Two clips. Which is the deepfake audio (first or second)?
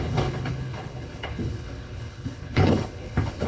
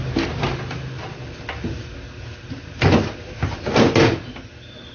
first